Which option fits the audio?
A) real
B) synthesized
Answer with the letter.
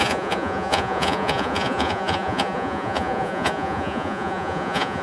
B